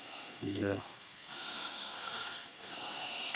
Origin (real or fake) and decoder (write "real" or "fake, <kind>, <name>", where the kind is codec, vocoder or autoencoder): fake, codec, SNAC